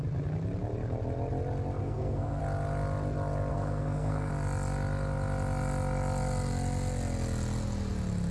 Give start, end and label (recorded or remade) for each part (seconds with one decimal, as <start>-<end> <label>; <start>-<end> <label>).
0.0-1.8 recorded; 1.8-2.4 remade; 2.4-3.5 recorded; 3.5-4.3 remade; 4.3-8.3 recorded